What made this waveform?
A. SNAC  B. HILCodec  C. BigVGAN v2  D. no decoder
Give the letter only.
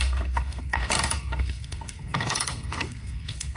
A